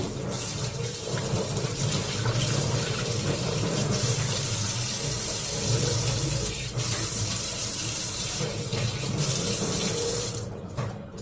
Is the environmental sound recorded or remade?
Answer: remade